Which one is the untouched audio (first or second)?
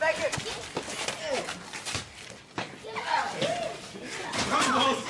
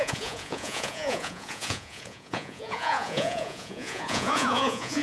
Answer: first